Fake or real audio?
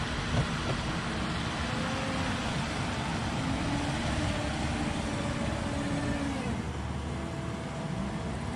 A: real